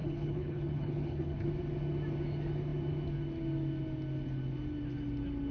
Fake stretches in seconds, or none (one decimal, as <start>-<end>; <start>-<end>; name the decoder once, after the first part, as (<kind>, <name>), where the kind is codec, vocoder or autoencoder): 0.0-1.5 (codec, HILCodec)